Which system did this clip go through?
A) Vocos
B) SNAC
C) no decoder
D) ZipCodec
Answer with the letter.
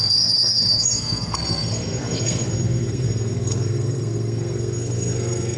B